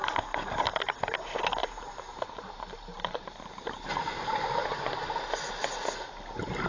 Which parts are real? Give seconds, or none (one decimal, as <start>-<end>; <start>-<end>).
0.0-1.6; 3.3-4.6; 5.2-6.7